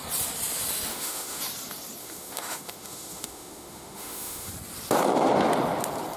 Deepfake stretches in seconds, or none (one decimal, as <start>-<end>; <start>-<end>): 0.9-1.4; 2.0-4.5